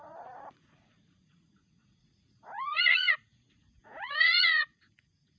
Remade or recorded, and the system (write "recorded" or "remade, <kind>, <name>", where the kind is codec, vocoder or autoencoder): remade, vocoder, Vocos